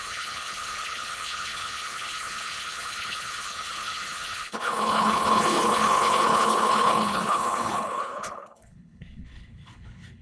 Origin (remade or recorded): remade